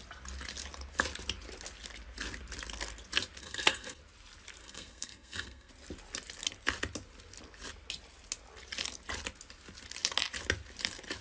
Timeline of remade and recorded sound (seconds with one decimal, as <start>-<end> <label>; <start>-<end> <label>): 0.0-3.4 recorded; 3.4-4.0 remade; 4.0-4.6 recorded; 4.6-5.7 remade; 5.7-11.2 recorded